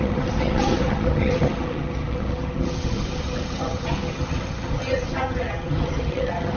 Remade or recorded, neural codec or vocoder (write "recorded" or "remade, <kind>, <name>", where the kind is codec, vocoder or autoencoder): remade, vocoder, HiFi-GAN